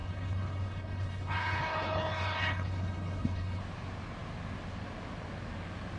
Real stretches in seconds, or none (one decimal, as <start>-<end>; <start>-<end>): 3.6-6.0